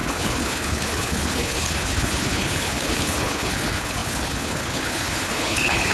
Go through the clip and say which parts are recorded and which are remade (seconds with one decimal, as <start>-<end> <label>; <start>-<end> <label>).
0.0-5.9 remade